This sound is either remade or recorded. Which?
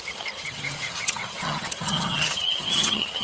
remade